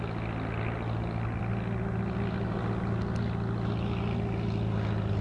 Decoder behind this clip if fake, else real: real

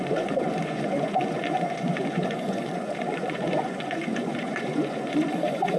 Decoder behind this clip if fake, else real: fake, vocoder, Vocos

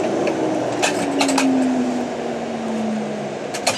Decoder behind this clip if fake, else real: real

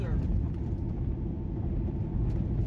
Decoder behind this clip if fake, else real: real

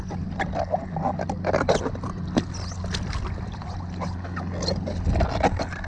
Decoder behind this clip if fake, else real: real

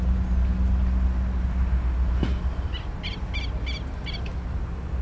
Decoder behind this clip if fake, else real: real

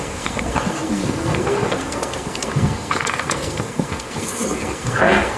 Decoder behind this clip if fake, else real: fake, codec, SNAC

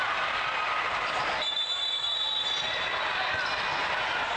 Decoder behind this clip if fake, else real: real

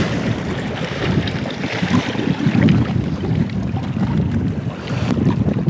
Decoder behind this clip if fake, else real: real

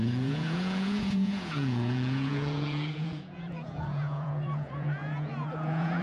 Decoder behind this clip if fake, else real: fake, vocoder, Vocos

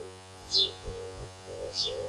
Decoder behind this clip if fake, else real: fake, vocoder, Vocos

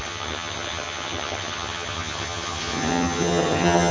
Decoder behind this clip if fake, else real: fake, vocoder, HiFi-GAN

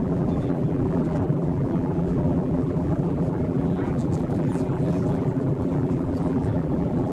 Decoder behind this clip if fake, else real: fake, vocoder, BigVGAN v2